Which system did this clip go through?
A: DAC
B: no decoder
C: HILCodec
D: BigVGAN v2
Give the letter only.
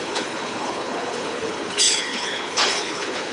C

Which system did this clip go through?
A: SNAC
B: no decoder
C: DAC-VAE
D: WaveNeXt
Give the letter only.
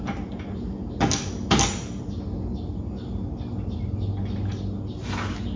B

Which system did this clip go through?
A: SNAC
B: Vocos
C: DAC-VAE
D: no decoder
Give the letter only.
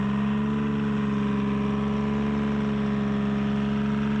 D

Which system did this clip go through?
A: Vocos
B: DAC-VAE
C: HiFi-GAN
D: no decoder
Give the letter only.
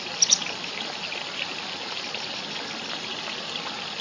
D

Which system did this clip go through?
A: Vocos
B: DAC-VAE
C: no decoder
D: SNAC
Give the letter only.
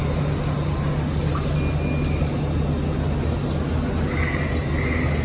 C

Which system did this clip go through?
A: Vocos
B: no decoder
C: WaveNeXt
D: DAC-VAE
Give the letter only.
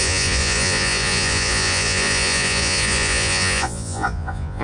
A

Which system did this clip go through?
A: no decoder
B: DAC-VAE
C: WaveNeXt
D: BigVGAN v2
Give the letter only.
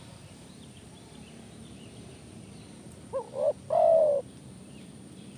D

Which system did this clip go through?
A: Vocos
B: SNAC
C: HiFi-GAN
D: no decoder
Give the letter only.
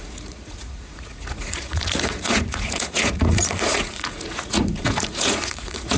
A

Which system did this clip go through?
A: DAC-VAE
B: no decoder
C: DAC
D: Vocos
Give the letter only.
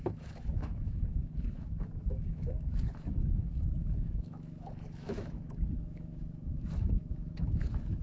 A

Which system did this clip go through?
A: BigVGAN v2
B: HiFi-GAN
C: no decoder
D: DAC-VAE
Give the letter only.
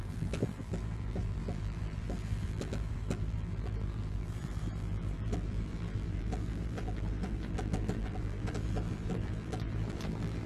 A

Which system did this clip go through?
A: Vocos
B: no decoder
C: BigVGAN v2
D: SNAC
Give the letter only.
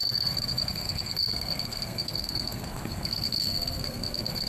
D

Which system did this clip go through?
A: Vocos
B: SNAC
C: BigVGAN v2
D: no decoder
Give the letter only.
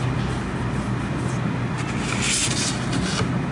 D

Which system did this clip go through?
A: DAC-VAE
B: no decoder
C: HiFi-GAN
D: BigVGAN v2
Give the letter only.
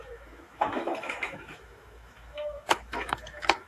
A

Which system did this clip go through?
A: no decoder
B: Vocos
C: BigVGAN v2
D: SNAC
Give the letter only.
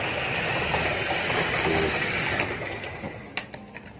A